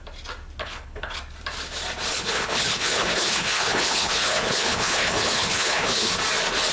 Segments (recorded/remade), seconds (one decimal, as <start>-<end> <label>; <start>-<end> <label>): 0.0-0.6 recorded; 0.6-1.2 remade; 1.2-2.1 recorded; 2.1-6.1 remade; 6.1-6.7 recorded